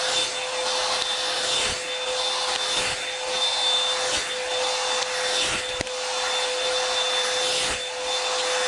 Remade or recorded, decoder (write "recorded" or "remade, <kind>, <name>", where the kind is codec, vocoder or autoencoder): recorded